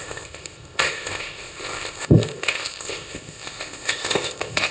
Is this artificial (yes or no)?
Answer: yes